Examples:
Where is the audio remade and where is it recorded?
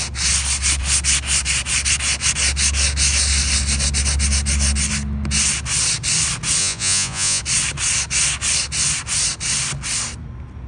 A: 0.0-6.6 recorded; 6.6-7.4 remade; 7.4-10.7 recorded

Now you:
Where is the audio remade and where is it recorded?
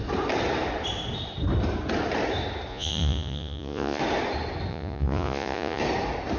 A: 0.0-2.7 recorded; 2.7-4.0 remade; 4.0-4.7 recorded; 4.7-5.8 remade; 5.8-6.4 recorded